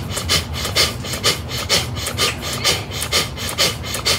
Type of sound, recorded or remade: recorded